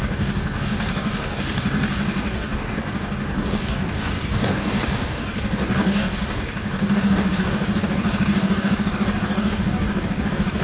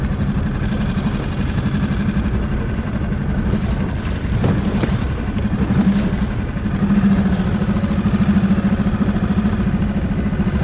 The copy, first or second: first